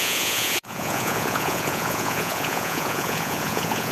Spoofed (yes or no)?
yes